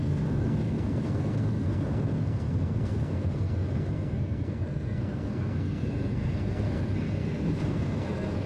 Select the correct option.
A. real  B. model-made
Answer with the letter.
B